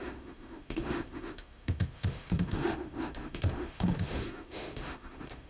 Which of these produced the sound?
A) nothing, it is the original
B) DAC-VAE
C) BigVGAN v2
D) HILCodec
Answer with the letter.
B